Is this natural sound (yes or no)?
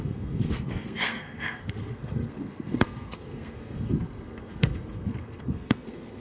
no